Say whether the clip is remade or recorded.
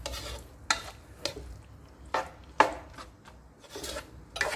recorded